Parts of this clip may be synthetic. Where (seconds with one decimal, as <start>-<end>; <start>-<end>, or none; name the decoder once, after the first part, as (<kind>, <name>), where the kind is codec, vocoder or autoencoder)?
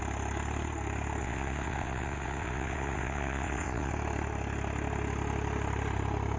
1.2-3.9 (vocoder, WaveNeXt)